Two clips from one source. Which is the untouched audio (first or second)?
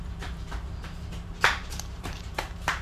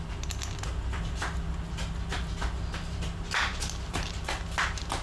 second